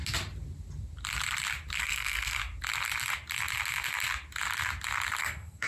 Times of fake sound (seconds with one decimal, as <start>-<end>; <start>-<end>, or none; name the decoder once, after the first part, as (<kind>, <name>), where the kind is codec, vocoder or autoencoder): 1.8-2.4 (codec, SNAC); 5.2-5.7